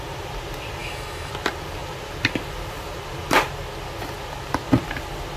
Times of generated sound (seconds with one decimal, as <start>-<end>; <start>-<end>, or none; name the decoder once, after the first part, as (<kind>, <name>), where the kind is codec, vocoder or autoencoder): 0.8-1.3 (autoencoder, DAC-VAE)